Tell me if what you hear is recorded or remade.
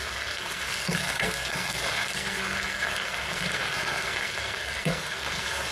remade